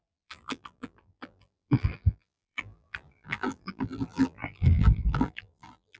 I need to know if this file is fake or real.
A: fake